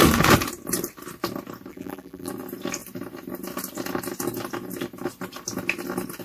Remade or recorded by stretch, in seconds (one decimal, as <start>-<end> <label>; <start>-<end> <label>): 0.0-1.7 recorded; 1.7-2.3 remade; 2.3-6.2 recorded